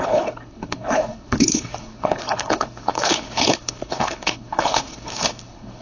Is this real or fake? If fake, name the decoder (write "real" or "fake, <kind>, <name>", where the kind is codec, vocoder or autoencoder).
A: fake, codec, HILCodec